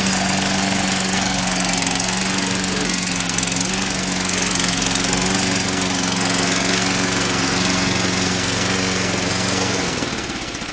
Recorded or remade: remade